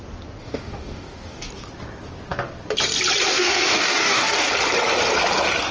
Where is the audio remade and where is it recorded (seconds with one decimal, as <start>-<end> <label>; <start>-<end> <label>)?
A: 0.0-0.4 recorded; 0.4-1.5 remade; 1.5-3.3 recorded; 3.3-4.5 remade; 4.5-5.7 recorded